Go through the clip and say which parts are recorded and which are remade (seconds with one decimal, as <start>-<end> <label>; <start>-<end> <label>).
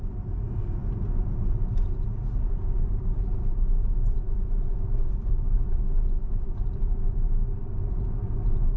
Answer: 0.0-2.6 recorded; 2.6-3.6 remade; 3.6-8.8 recorded